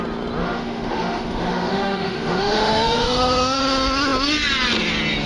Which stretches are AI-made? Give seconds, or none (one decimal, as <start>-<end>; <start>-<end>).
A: 0.4-3.6